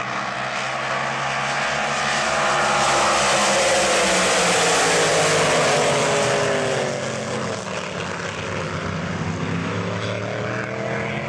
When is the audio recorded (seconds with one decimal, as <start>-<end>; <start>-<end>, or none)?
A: 0.0-9.6; 10.2-11.3